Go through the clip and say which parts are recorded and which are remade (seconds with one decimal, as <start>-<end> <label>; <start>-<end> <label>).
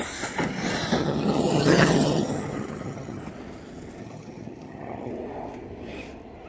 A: 0.0-1.0 recorded; 1.0-3.2 remade; 3.2-4.0 recorded; 4.0-5.1 remade; 5.1-6.5 recorded